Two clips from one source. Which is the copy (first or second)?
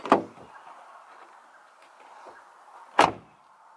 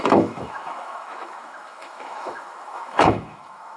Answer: second